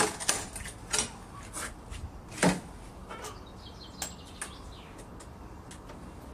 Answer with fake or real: real